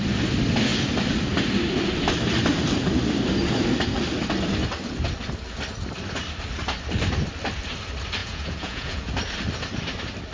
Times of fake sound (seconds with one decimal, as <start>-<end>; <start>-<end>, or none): 8.2-9.1